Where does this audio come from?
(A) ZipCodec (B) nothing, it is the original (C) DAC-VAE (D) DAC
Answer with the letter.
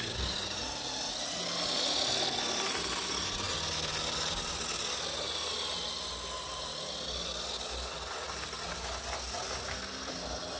B